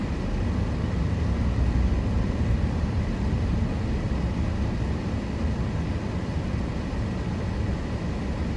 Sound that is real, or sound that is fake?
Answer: real